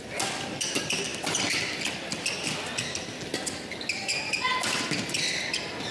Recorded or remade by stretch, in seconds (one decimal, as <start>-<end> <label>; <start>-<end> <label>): 0.0-5.9 recorded